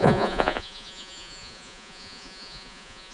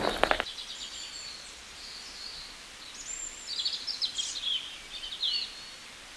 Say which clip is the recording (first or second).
second